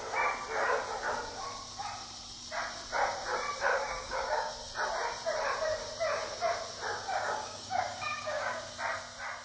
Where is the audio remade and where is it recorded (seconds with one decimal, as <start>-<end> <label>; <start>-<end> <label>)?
0.0-3.7 recorded; 3.7-4.5 remade; 4.5-6.9 recorded; 6.9-8.6 remade; 8.6-9.4 recorded